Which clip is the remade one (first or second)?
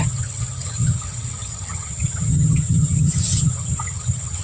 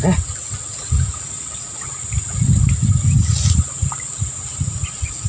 first